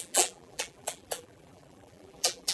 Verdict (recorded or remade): remade